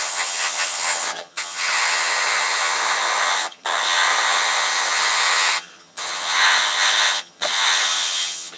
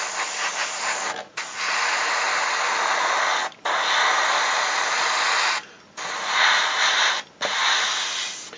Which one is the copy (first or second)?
first